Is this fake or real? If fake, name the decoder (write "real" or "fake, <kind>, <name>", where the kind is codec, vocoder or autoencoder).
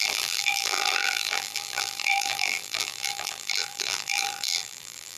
fake, vocoder, BigVGAN v2